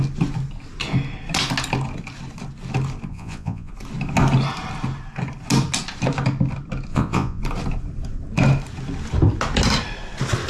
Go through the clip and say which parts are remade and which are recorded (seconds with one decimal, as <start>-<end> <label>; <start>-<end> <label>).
0.0-3.1 recorded; 3.1-3.7 remade; 3.7-6.9 recorded; 6.9-7.4 remade; 7.4-10.5 recorded